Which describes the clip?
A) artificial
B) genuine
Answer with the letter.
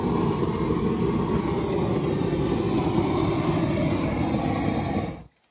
B